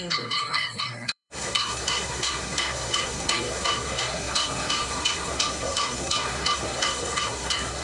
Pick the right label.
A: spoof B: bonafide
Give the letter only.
A